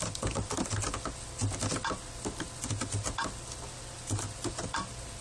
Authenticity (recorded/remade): recorded